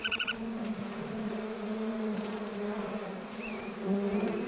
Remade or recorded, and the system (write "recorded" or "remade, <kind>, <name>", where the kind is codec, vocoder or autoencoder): remade, vocoder, Vocos